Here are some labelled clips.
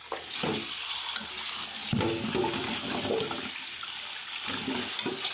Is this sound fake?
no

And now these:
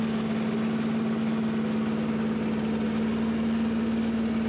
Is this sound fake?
no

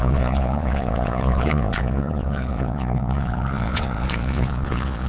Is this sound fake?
yes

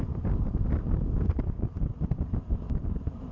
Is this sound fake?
no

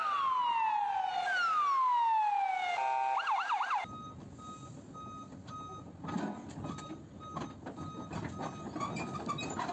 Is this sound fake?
no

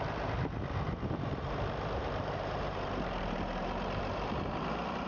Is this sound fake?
yes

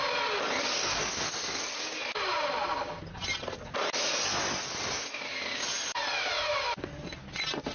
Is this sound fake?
no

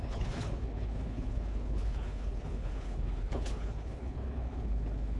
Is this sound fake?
yes